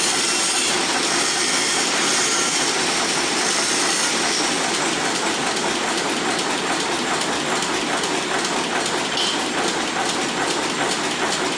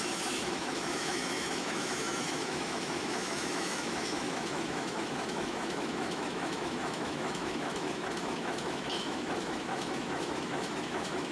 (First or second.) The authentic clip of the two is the first